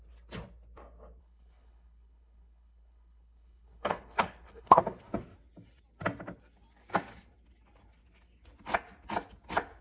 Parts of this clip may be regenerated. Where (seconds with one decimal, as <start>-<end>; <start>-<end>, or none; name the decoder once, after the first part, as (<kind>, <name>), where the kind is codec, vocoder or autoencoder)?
1.2-4.8 (codec, HILCodec)